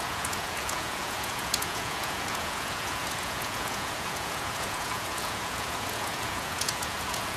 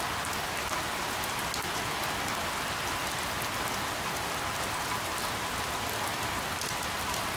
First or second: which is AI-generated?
first